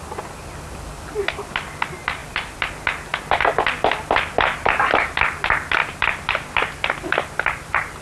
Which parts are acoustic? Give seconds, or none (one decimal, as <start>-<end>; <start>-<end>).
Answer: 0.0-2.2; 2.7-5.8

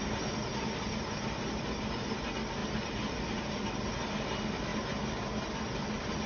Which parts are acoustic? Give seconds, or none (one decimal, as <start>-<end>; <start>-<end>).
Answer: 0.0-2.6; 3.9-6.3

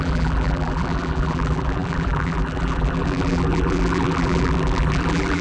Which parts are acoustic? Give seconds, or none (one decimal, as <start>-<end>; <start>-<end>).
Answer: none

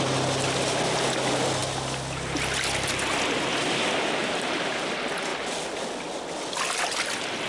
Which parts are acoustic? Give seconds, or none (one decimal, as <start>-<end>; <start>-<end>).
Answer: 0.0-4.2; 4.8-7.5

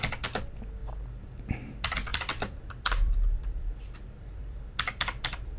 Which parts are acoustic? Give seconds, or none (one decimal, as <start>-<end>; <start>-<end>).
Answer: 0.0-0.8; 1.4-2.1